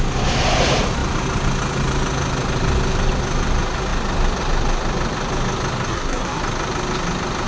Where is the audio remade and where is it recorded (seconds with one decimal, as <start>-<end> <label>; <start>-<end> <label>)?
0.0-5.9 recorded; 5.9-6.4 remade; 6.4-7.5 recorded